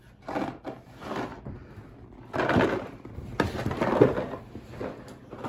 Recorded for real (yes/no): yes